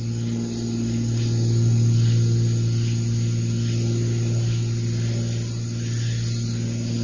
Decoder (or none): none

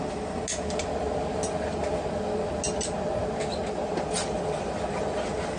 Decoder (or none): none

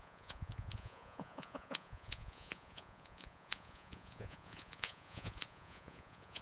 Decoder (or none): vocoder, Vocos